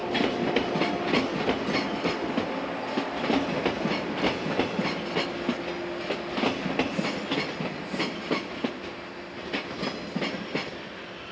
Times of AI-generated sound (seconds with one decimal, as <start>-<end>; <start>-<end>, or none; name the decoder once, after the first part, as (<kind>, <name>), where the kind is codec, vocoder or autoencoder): none